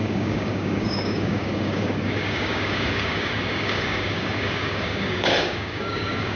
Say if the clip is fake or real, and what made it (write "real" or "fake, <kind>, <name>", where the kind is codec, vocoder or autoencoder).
fake, codec, DAC